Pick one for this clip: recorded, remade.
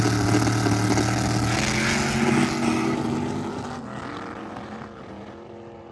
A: recorded